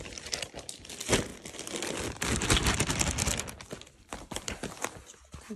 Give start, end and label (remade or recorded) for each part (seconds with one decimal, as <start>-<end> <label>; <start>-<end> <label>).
0.0-5.6 recorded